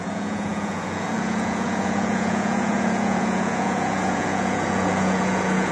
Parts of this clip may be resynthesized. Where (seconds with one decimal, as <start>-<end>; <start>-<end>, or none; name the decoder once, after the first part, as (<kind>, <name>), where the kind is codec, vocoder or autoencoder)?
0.0-5.7 (vocoder, Vocos)